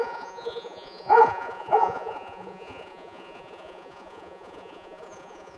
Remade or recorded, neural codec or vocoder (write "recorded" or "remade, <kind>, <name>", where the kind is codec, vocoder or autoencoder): remade, vocoder, Vocos